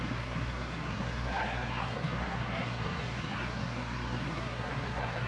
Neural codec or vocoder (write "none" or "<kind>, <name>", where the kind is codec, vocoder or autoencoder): codec, SNAC